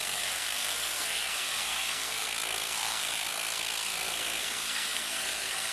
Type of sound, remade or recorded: remade